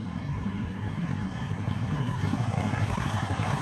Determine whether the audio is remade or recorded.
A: remade